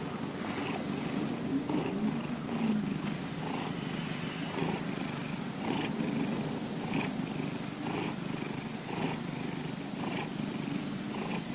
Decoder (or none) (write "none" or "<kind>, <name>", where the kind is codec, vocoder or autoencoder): none